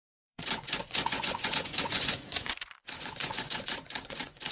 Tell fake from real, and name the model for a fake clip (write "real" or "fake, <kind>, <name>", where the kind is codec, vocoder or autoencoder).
fake, vocoder, Vocos